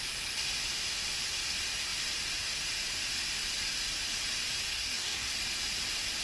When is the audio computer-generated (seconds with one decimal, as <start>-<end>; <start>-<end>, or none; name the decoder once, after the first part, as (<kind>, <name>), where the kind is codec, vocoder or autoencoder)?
4.7-5.3 (codec, DAC)